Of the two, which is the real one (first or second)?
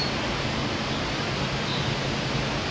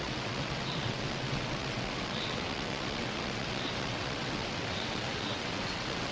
first